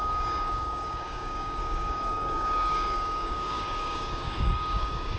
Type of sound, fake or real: fake